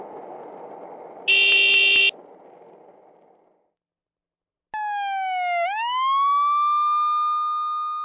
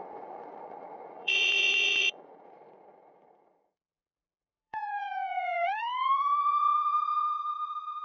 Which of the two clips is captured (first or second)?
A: first